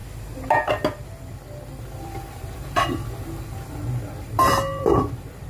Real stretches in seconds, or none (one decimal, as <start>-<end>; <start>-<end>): 0.0-1.8